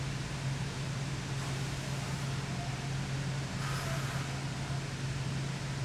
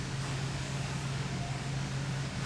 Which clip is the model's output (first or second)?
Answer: second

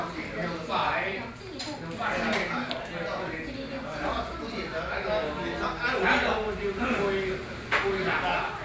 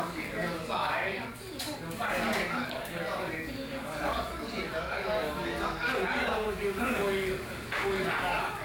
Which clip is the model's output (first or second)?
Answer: second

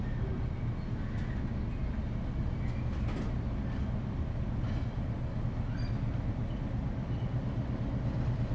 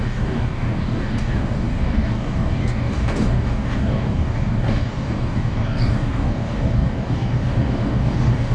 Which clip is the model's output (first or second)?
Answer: second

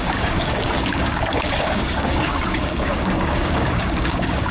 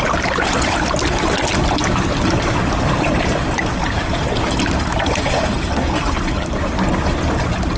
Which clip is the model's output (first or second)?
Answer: first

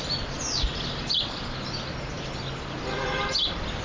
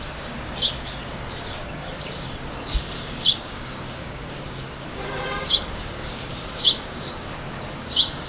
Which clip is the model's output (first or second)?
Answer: second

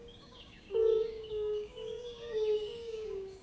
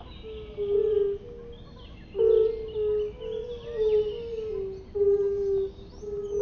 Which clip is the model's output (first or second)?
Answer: first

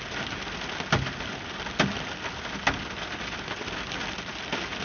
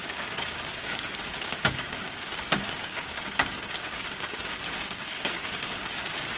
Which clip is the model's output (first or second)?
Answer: second